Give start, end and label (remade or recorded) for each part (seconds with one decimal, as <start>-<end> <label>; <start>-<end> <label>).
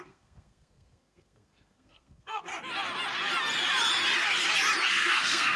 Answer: 0.0-2.5 remade; 2.5-4.9 recorded; 4.9-5.6 remade